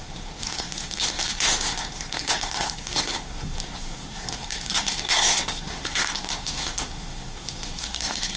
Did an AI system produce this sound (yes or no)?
yes